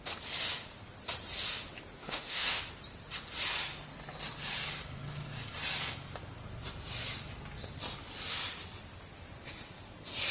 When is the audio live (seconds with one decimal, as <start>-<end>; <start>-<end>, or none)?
0.0-2.0; 2.6-10.3